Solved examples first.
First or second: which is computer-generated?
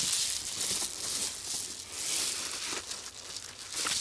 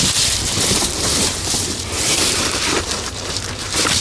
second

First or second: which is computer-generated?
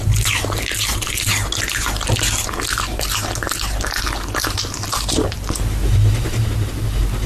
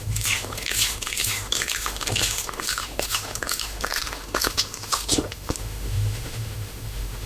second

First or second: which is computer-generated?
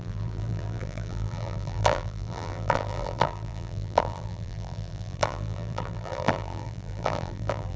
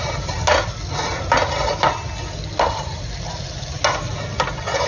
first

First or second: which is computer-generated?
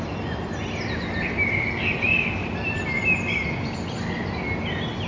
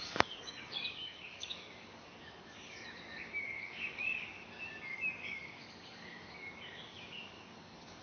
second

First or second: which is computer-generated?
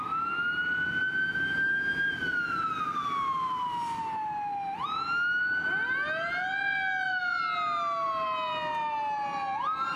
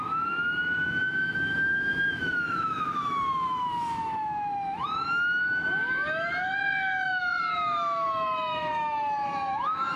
second